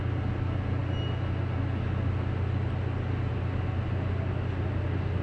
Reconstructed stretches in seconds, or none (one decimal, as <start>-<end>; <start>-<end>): none